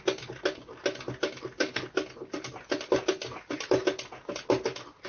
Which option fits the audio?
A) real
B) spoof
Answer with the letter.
A